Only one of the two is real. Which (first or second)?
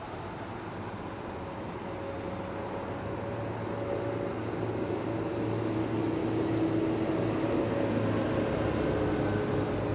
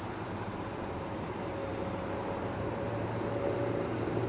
first